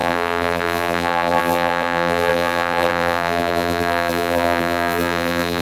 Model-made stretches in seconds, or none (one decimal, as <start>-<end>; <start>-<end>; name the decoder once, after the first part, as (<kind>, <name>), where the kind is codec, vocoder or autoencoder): 0.0-5.6 (vocoder, BigVGAN v2)